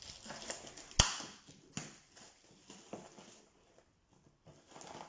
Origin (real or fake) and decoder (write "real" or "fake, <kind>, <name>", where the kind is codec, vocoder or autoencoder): real